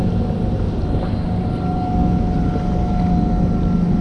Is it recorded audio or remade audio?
recorded